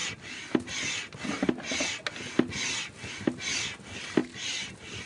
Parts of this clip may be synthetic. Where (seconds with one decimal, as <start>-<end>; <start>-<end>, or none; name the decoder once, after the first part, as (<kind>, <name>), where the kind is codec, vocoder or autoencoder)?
none